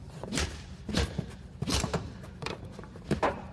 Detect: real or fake fake